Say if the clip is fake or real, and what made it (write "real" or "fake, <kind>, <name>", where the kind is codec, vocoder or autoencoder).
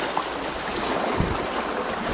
real